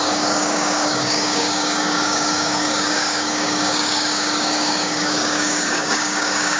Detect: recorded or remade remade